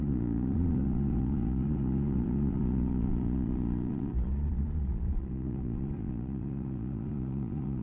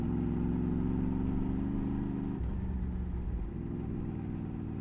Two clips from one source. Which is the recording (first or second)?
second